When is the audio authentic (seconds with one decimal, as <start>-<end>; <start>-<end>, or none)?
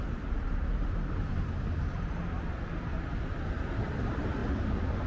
1.3-3.8; 4.4-5.1